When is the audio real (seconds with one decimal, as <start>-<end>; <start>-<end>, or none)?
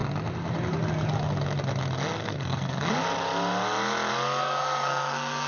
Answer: 0.0-2.2; 2.9-4.4